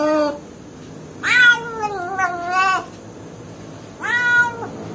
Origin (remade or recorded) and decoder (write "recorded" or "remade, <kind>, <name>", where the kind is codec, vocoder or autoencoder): recorded